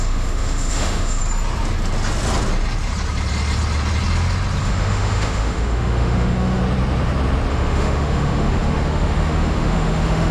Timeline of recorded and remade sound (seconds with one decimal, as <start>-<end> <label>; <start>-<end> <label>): 0.0-1.2 remade; 1.2-4.6 recorded; 4.6-6.6 remade; 6.6-7.5 recorded; 7.5-10.3 remade